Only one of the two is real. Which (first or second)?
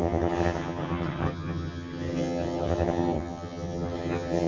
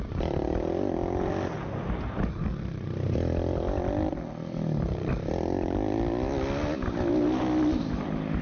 second